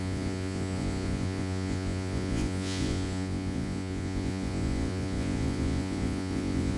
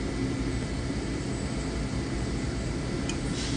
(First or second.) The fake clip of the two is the first